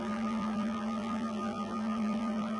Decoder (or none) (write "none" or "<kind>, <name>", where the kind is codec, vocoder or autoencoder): vocoder, BigVGAN v2